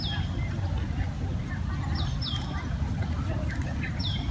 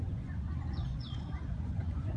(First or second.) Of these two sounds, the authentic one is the first